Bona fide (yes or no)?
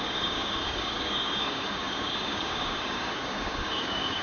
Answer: no